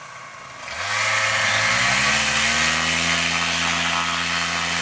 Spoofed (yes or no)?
no